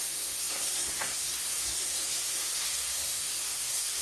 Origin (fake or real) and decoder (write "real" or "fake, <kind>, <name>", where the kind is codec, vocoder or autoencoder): fake, codec, SNAC